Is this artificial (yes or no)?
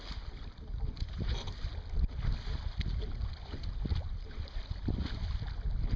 no